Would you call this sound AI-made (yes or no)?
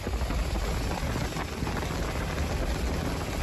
no